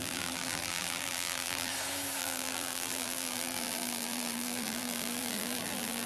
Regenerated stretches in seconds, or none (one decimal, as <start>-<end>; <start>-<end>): 0.0-1.7; 2.2-6.1